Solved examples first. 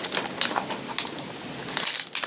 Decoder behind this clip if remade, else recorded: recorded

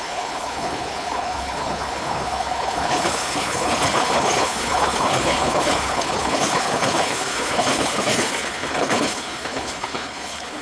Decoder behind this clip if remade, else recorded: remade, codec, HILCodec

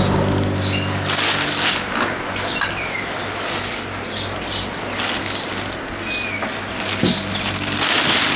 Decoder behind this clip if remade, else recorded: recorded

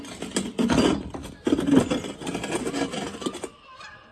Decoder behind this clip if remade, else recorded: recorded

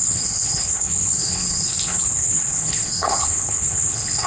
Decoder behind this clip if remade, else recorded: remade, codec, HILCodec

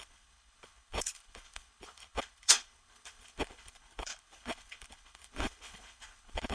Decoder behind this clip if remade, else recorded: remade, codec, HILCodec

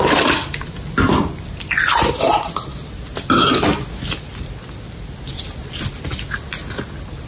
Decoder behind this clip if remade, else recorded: recorded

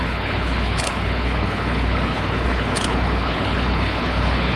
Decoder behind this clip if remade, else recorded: remade, codec, HILCodec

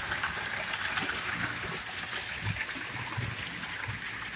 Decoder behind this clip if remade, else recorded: recorded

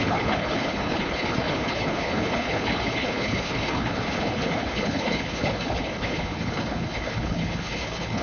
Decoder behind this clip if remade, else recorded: remade, codec, HILCodec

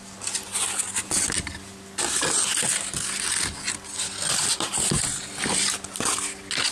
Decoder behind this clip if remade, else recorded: recorded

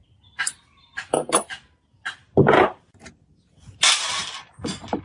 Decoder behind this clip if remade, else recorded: recorded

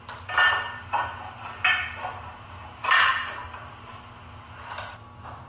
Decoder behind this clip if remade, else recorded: recorded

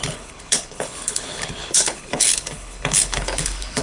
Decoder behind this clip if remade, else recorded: remade, codec, HILCodec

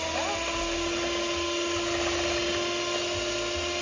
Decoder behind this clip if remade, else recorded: recorded